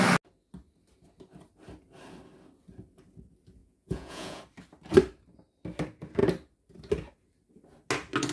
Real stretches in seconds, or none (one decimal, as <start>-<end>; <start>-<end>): 0.0-3.6; 4.4-8.3